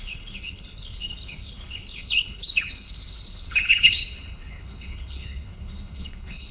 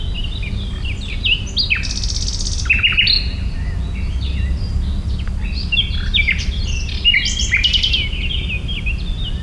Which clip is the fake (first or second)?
first